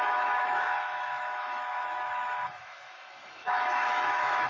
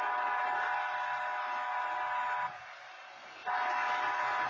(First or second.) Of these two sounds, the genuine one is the second